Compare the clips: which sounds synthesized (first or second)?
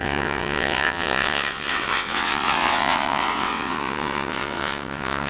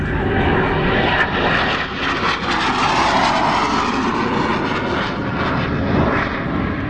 first